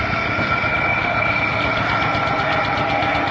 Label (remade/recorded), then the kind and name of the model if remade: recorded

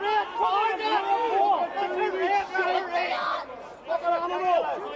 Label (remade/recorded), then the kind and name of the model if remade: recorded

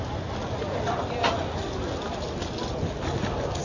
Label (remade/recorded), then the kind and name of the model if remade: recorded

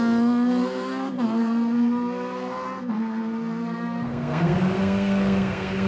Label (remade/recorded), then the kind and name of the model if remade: remade, codec, SNAC